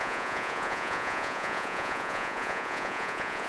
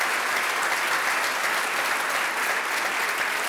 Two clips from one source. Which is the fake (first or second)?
first